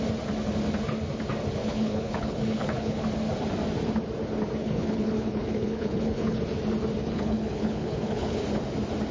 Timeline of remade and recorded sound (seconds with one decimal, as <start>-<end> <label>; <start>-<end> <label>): 0.0-1.6 recorded; 1.6-3.0 remade; 3.0-4.6 recorded; 4.6-6.4 remade; 6.4-7.0 recorded; 7.0-8.4 remade; 8.4-9.1 recorded